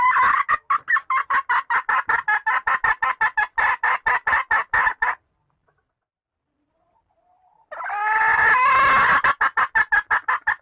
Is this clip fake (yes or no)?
no